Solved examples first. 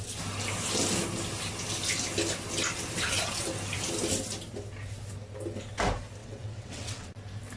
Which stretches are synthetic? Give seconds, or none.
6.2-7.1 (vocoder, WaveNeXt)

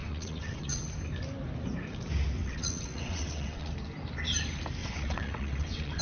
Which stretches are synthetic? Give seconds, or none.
0.0-0.8 (vocoder, WaveNeXt); 2.4-3.7; 4.8-6.0